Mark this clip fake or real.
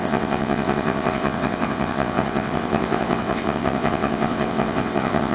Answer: fake